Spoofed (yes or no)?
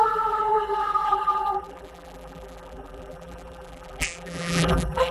yes